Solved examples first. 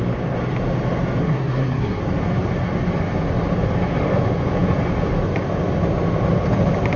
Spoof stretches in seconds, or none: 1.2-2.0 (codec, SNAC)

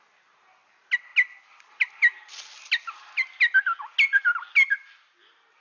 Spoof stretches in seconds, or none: none

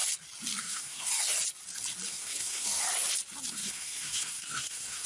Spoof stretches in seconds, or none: 0.6-1.1 (codec, SNAC); 2.1-2.8; 3.5-5.1

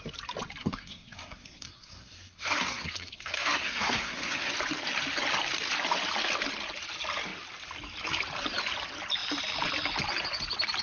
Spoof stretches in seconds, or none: 0.6-4.5 (codec, SNAC)